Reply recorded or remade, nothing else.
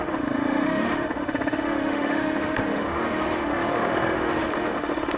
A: remade